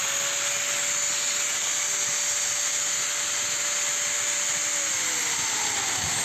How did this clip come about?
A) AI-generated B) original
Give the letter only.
B